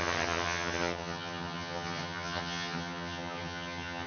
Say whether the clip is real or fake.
fake